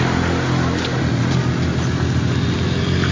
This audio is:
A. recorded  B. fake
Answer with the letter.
A